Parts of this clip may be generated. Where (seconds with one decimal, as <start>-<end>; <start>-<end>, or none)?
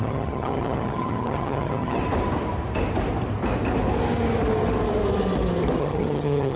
0.0-2.0; 5.8-6.6